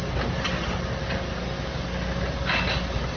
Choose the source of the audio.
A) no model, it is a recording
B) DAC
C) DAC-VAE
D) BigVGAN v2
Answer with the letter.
A